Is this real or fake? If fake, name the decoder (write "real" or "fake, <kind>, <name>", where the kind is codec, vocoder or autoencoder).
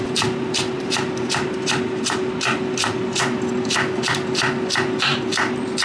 real